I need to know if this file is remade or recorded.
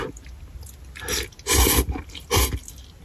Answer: recorded